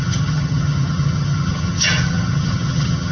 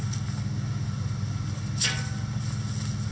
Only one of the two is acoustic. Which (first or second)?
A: second